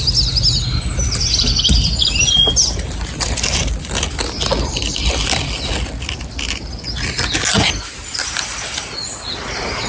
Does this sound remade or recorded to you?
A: recorded